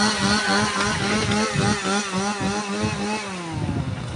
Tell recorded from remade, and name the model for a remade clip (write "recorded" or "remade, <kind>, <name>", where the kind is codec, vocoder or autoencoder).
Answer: recorded